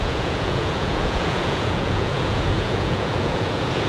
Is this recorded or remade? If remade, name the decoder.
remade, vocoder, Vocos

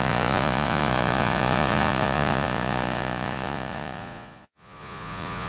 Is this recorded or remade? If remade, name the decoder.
remade, vocoder, Vocos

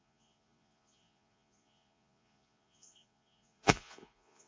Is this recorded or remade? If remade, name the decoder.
remade, vocoder, Vocos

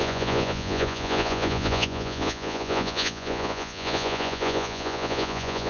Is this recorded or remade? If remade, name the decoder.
remade, vocoder, Vocos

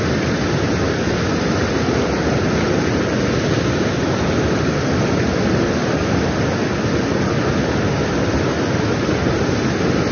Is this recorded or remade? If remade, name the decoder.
recorded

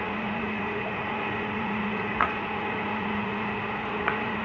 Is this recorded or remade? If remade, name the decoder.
remade, vocoder, Vocos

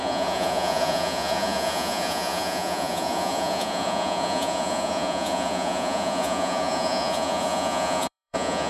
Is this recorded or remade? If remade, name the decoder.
remade, vocoder, Vocos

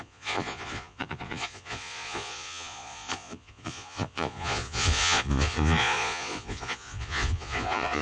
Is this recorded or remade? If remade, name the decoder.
remade, vocoder, Vocos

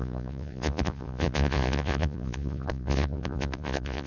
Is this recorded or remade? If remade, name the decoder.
remade, vocoder, Vocos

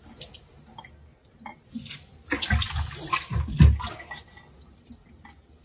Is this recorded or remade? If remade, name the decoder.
recorded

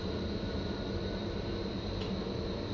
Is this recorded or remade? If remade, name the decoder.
recorded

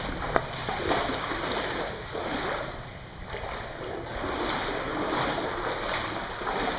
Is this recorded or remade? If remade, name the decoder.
recorded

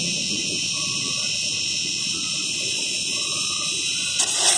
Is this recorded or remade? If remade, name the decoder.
remade, vocoder, Vocos